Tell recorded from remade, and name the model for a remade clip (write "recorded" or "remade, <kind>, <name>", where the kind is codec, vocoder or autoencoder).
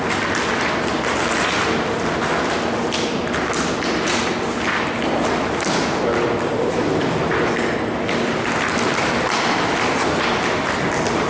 recorded